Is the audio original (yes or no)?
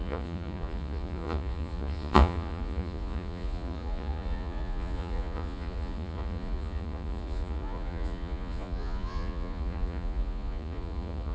no